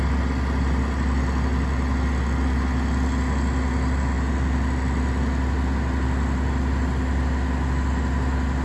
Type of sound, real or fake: real